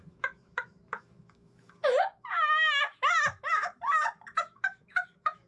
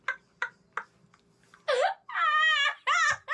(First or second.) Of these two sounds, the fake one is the first